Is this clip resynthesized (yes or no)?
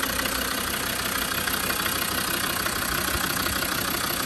no